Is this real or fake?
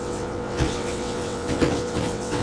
fake